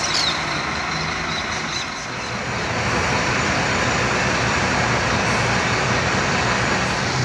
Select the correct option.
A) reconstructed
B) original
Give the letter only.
B